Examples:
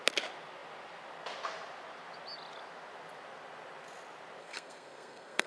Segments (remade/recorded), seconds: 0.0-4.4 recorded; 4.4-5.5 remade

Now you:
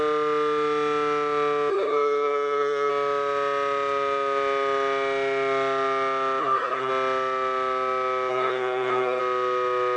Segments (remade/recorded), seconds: 0.0-1.7 recorded; 1.7-2.9 remade; 2.9-6.4 recorded; 6.4-6.9 remade; 6.9-8.3 recorded; 8.3-9.2 remade; 9.2-10.0 recorded

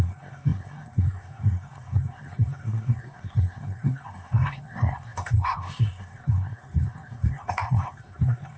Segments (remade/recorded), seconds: 0.0-8.6 remade

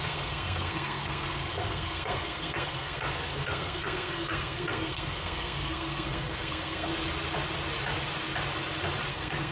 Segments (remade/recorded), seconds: 0.0-6.9 remade; 6.9-9.1 recorded; 9.1-9.5 remade